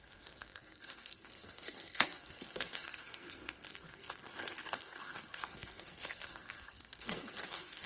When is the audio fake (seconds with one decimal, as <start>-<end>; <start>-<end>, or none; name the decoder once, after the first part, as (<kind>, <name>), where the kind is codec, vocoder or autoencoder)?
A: 0.0-7.9 (codec, SNAC)